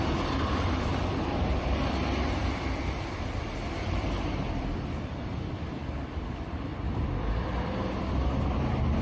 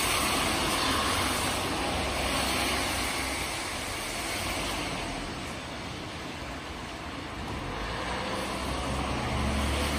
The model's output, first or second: first